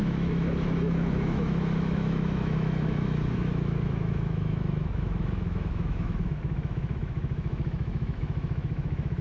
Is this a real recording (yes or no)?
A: no